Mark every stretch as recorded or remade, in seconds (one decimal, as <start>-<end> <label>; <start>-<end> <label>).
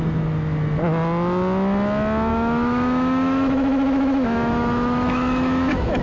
0.0-2.3 recorded; 2.3-6.0 remade